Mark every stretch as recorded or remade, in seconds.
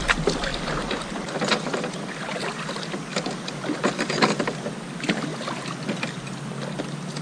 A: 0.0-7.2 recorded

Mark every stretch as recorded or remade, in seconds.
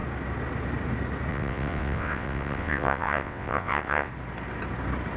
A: 0.0-1.3 recorded; 1.3-4.1 remade; 4.1-5.2 recorded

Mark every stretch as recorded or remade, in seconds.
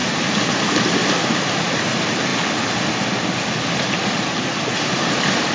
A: 0.0-5.5 recorded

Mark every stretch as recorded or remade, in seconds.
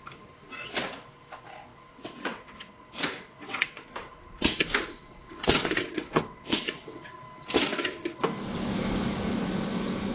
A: 0.0-1.7 recorded; 1.7-3.9 remade; 3.9-5.0 recorded; 5.0-7.1 remade; 7.1-10.1 recorded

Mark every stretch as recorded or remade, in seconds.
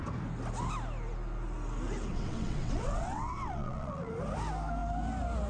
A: 0.0-2.1 recorded; 2.1-4.1 remade; 4.1-5.5 recorded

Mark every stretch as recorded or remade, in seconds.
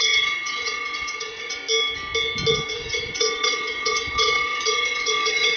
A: 0.0-1.6 remade; 1.6-2.5 recorded; 2.5-5.6 remade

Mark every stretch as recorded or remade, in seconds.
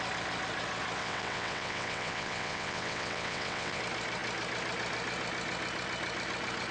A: 0.0-1.0 recorded; 1.0-3.8 remade; 3.8-6.7 recorded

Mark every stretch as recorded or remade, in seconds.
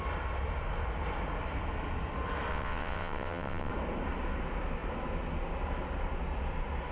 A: 0.0-2.5 recorded; 2.5-3.7 remade; 3.7-6.9 recorded